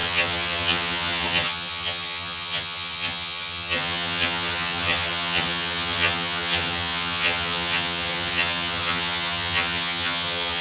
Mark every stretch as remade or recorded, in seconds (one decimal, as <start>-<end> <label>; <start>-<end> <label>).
0.0-10.6 remade